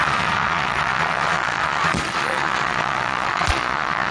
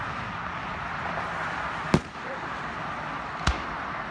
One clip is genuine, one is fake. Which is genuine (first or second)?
second